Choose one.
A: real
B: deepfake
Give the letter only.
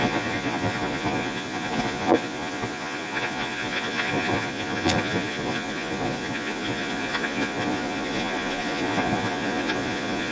B